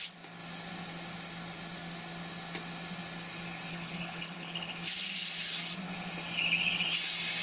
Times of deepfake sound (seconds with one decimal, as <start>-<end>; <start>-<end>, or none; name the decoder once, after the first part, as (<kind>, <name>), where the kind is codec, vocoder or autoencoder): 3.7-4.7 (codec, HILCodec)